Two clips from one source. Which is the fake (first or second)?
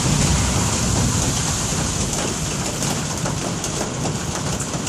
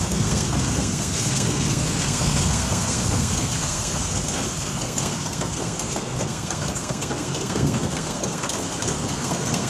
second